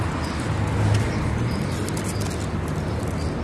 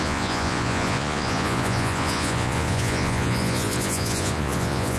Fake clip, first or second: second